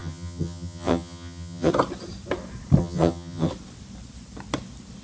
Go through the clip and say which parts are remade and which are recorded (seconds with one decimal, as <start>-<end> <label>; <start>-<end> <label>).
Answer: 0.0-1.7 remade; 1.7-2.8 recorded; 2.8-3.5 remade; 3.5-5.0 recorded